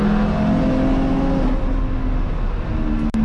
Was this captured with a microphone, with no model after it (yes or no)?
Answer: yes